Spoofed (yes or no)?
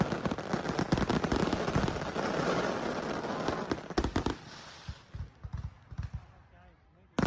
no